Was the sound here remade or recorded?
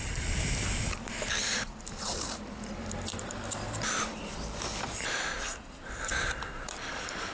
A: remade